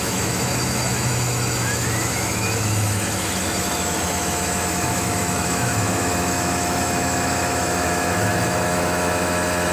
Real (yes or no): no